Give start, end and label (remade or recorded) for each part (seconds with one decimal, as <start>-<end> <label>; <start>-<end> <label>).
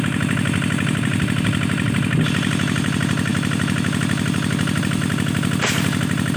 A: 0.0-6.4 recorded